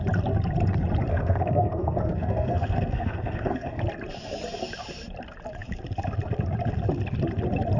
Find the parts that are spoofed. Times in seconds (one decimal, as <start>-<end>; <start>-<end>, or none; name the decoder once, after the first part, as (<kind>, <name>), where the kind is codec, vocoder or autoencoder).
1.1-3.8 (codec, SNAC)